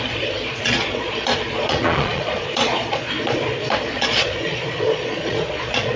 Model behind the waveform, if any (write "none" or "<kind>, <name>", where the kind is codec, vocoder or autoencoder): vocoder, Vocos